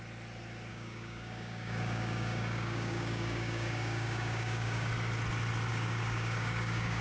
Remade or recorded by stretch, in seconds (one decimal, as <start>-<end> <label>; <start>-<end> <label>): 0.0-0.7 recorded; 0.7-4.9 remade; 4.9-5.7 recorded; 5.7-7.0 remade